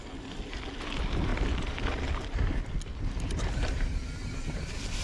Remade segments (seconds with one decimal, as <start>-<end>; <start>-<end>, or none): 1.3-3.6